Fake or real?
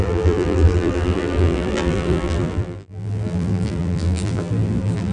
fake